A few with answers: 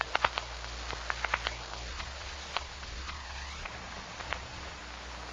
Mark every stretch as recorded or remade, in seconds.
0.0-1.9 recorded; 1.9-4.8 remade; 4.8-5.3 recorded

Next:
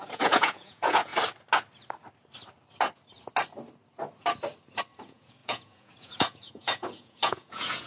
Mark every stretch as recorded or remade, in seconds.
0.0-1.1 remade; 1.1-5.0 recorded; 5.0-7.9 remade

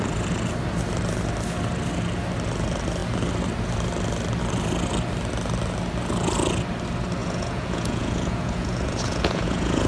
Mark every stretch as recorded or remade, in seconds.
0.0-7.2 recorded; 7.2-9.9 remade